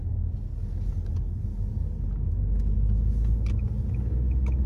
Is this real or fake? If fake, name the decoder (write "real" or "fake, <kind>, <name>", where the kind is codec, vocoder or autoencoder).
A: real